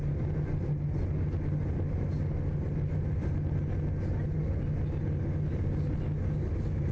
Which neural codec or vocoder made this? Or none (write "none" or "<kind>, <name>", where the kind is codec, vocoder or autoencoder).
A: none